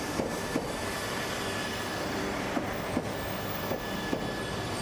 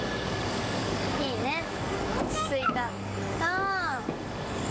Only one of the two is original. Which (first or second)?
first